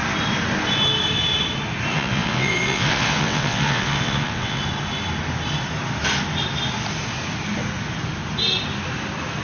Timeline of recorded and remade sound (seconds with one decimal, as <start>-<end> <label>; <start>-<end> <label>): 0.0-1.9 recorded; 1.9-4.6 remade; 4.6-9.4 recorded